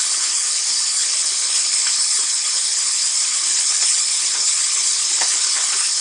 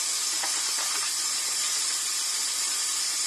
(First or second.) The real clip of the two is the second